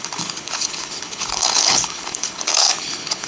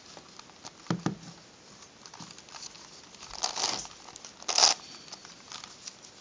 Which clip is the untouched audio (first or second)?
second